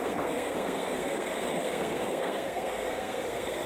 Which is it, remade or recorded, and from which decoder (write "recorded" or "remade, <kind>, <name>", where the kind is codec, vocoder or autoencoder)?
remade, codec, SNAC